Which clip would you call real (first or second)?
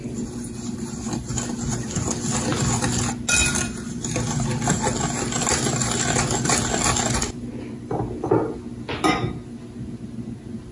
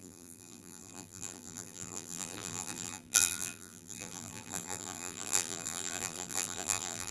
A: first